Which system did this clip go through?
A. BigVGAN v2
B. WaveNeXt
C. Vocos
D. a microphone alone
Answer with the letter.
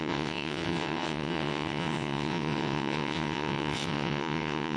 B